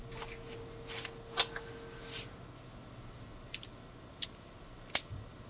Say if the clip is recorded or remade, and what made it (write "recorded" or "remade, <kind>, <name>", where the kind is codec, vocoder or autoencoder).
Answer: recorded